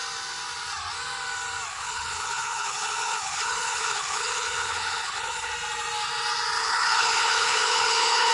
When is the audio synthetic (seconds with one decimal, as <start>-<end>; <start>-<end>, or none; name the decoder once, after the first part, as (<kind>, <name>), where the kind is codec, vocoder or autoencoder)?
1.7-5.5 (codec, HILCodec); 6.6-8.3